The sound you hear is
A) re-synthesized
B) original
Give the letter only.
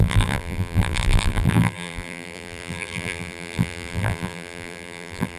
A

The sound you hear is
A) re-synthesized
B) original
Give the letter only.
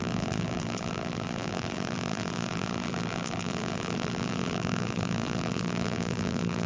A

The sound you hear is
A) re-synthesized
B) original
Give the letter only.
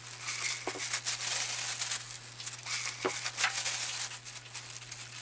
B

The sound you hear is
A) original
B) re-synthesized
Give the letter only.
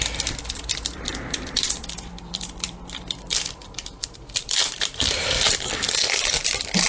B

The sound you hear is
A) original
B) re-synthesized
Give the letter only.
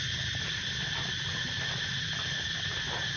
A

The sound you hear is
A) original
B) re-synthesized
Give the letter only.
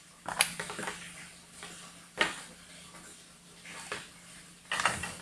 A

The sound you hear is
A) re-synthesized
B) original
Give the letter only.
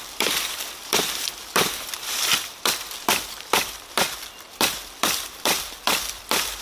A